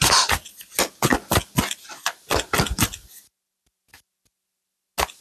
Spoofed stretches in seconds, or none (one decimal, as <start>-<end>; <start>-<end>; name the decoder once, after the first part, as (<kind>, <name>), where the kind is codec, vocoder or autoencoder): none